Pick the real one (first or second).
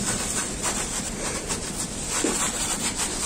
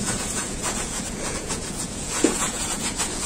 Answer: first